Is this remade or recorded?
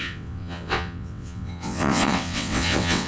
remade